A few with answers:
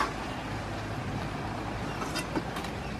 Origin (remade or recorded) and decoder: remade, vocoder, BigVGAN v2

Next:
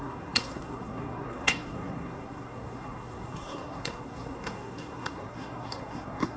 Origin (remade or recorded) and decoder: remade, codec, SNAC